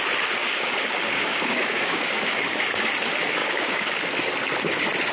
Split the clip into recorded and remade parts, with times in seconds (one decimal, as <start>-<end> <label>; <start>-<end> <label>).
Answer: 0.0-0.4 recorded; 0.4-2.6 remade; 2.6-3.4 recorded; 3.4-4.0 remade; 4.0-5.1 recorded